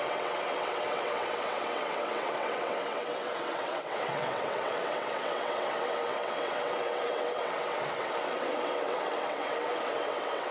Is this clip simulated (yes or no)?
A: yes